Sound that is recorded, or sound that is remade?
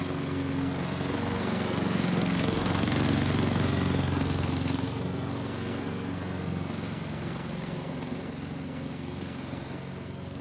remade